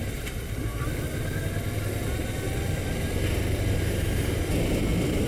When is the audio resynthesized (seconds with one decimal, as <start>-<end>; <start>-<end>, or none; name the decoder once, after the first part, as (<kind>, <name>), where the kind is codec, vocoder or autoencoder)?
0.0-0.7 (vocoder, BigVGAN v2); 3.9-5.3